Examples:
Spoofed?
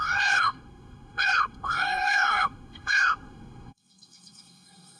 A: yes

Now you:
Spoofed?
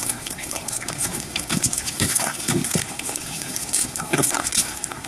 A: yes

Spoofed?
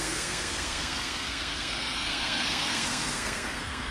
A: yes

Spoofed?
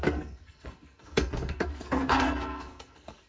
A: yes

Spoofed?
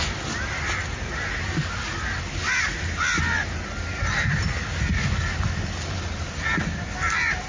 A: no